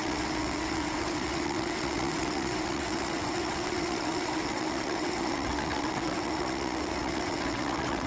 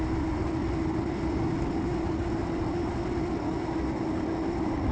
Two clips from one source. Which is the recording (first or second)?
second